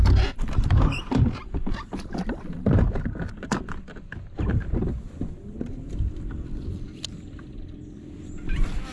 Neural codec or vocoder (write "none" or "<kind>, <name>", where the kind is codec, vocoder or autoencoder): vocoder, BigVGAN v2